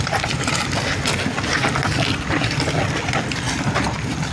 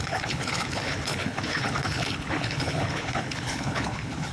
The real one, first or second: first